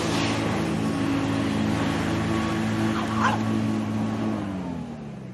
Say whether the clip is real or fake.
real